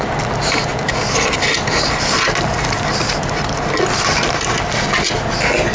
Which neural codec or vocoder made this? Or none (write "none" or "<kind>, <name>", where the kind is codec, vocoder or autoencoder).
none